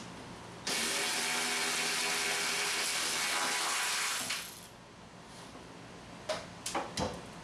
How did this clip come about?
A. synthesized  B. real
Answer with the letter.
B